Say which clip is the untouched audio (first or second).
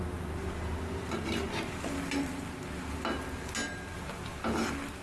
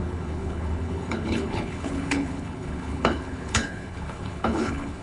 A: first